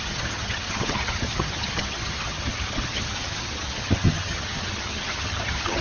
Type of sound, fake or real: fake